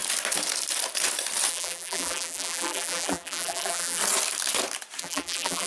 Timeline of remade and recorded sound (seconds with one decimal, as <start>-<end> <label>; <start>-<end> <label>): 0.0-1.5 recorded; 1.5-4.0 remade; 4.0-5.0 recorded; 5.0-5.7 remade